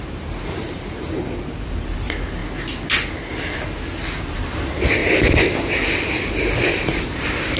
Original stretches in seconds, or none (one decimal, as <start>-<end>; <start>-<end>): 2.4-4.2; 5.0-6.7